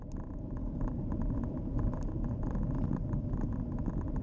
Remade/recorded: recorded